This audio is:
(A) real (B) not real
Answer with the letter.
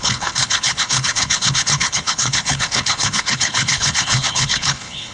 B